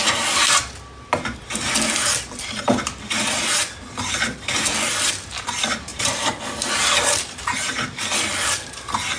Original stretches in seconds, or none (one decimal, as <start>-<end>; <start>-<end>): 0.0-9.2